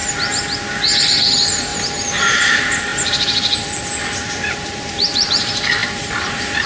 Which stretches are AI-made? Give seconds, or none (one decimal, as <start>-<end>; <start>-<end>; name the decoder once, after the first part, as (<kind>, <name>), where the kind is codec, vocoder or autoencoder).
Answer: 1.0-1.7 (vocoder, BigVGAN v2); 2.3-6.7